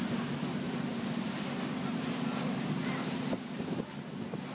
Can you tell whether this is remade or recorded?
recorded